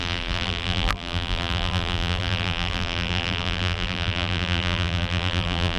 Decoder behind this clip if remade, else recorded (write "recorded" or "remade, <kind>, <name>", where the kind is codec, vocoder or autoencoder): remade, vocoder, BigVGAN v2